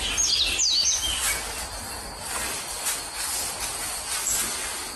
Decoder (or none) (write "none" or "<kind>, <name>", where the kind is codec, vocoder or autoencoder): none